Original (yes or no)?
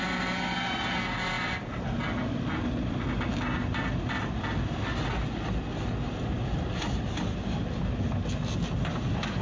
yes